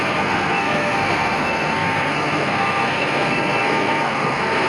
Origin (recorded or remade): remade